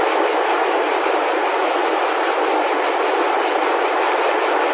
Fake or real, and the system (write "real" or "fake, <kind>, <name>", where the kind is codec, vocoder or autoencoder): real